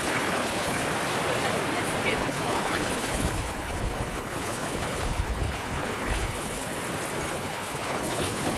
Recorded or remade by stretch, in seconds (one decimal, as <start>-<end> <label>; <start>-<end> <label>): 0.0-0.8 remade; 0.8-2.2 recorded; 2.2-6.7 remade; 6.7-7.3 recorded; 7.3-8.6 remade